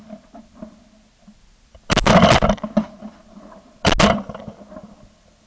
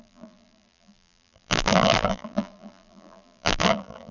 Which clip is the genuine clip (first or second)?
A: first